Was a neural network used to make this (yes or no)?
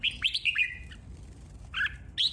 no